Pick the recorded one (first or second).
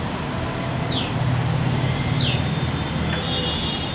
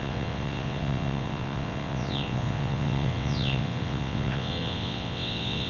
first